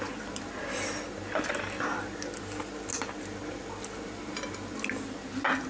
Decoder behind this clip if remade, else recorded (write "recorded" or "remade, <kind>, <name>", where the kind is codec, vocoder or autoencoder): recorded